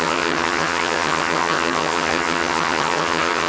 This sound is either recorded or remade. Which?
remade